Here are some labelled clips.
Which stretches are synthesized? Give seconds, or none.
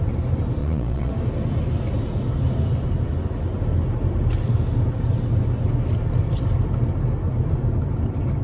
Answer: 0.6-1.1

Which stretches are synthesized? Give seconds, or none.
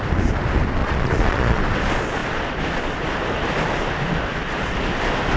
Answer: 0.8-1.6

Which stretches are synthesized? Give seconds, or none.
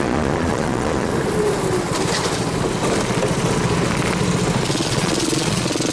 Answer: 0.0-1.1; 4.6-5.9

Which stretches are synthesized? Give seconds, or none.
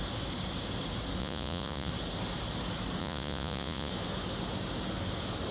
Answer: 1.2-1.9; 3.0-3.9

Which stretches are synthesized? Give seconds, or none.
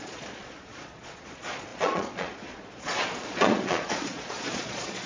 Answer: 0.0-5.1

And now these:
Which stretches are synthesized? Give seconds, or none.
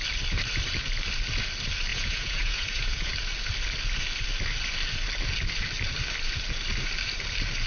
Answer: 1.9-3.1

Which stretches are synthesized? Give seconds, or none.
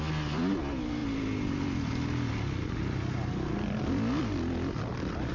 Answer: none